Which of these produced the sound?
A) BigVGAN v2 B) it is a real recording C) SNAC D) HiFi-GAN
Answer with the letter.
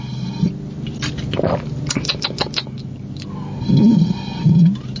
B